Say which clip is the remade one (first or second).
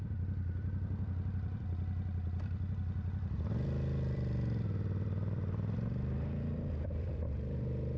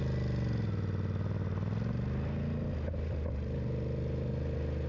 first